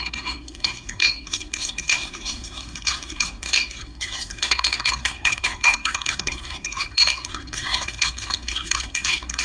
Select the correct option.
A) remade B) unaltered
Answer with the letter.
A